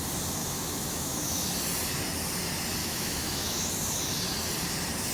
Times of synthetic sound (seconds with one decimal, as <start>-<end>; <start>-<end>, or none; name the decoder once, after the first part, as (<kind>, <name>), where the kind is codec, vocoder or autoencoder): 0.4-1.5 (autoencoder, DAC-VAE); 2.8-3.7